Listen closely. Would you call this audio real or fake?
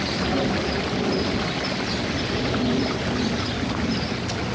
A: real